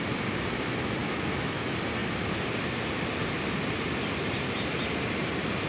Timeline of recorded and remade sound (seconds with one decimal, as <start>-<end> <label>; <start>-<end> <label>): 0.0-1.0 recorded; 1.0-1.6 remade; 1.6-5.7 recorded